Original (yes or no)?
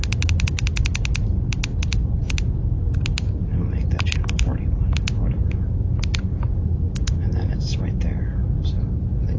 yes